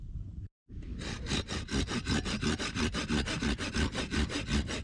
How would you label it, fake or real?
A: real